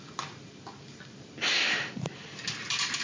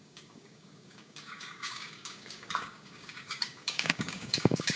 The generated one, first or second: second